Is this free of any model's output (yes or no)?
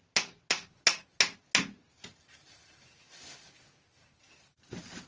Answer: yes